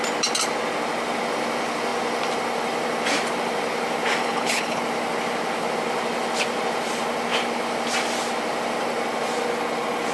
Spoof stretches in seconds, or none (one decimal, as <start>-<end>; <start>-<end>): 4.2-4.8